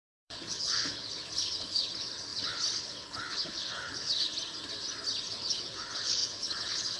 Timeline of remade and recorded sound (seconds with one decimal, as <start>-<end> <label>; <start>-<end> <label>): 0.0-4.3 remade; 4.3-5.3 recorded; 5.3-7.0 remade